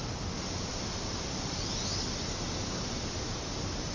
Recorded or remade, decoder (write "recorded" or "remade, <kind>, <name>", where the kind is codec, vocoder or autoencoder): recorded